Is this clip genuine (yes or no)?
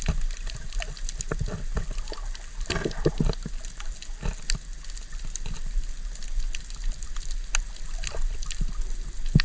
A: yes